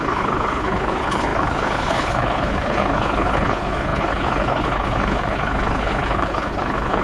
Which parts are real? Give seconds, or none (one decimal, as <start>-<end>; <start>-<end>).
none